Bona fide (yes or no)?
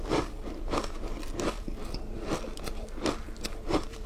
no